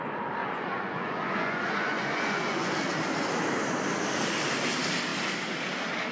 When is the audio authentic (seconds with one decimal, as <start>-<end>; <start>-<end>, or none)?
0.0-0.4; 2.7-6.1